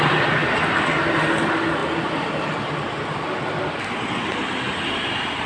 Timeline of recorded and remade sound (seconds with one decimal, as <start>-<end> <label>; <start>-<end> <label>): 0.0-5.5 recorded